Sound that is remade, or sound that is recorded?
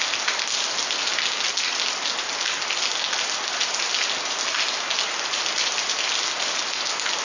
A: recorded